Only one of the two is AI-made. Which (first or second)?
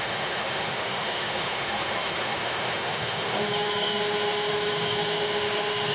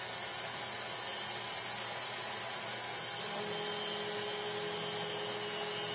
first